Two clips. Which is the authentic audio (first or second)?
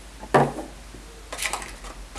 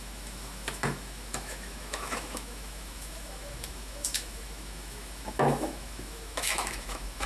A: first